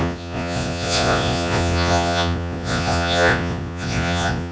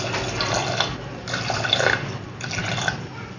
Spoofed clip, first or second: first